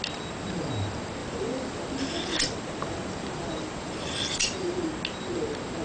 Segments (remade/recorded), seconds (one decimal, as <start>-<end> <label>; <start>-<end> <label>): 0.0-1.2 recorded; 1.2-4.7 remade; 4.7-5.8 recorded